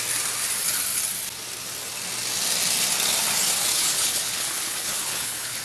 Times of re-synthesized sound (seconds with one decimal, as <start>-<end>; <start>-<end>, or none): 3.7-5.6